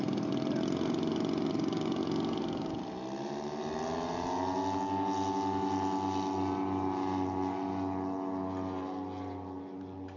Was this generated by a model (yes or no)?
no